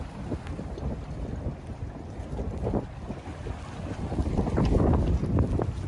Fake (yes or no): no